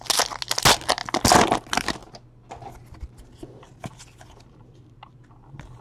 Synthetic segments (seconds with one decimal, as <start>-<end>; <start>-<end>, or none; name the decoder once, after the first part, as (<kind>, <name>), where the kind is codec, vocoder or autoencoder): none